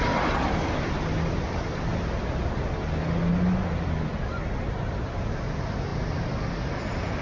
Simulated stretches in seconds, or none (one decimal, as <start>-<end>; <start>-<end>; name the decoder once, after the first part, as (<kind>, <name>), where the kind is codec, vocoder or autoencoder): none